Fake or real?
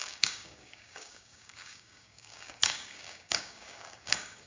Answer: fake